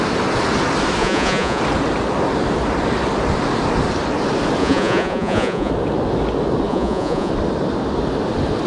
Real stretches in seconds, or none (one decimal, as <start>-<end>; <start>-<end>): 0.0-1.0; 1.6-4.6; 5.7-6.7; 7.3-8.7